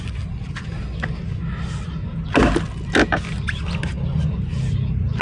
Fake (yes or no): no